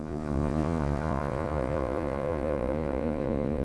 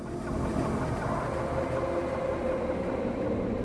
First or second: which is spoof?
first